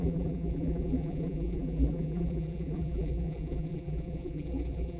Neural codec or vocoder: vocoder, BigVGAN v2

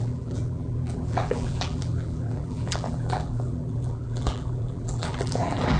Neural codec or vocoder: vocoder, BigVGAN v2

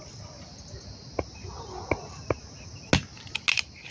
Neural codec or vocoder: none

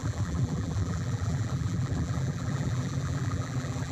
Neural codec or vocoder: vocoder, BigVGAN v2